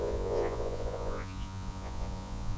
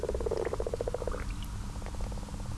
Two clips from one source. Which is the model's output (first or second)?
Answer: first